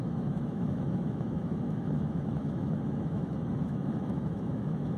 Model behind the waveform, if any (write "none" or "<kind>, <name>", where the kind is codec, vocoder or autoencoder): autoencoder, DAC-VAE